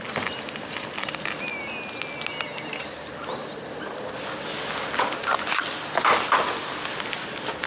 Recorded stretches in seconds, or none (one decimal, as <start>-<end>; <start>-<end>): 0.0-7.7